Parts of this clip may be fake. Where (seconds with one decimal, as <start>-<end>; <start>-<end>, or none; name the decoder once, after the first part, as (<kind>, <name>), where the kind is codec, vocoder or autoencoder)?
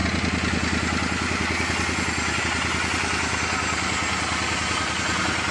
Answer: none